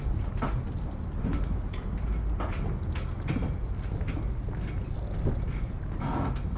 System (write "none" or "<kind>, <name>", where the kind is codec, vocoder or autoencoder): none